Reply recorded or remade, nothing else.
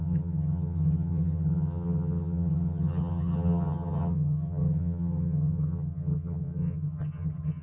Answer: remade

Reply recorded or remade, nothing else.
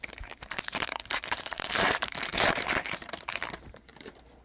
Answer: remade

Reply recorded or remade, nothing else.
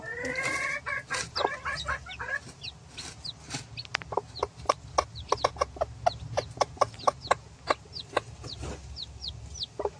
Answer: recorded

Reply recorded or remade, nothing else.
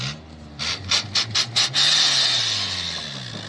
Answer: recorded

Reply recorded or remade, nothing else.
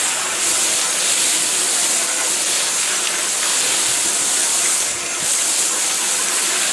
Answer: recorded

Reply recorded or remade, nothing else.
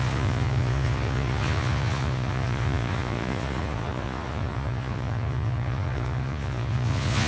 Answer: remade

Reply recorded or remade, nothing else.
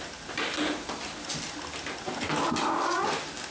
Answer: recorded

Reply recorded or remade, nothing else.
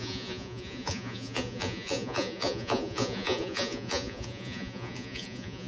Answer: remade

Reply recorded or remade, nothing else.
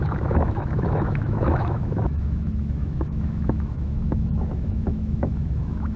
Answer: remade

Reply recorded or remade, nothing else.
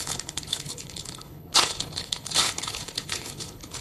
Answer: remade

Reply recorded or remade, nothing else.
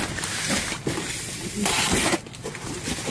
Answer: recorded